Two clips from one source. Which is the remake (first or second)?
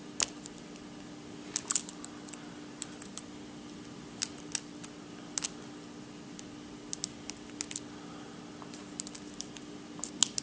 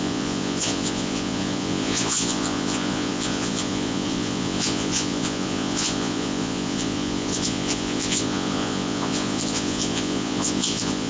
second